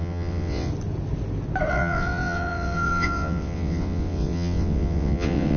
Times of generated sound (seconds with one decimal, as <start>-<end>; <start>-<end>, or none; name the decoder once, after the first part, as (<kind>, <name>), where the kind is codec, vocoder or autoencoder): 0.0-0.7 (vocoder, WaveNeXt); 1.7-5.6